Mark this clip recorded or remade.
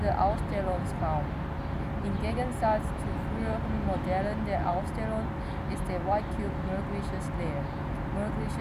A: recorded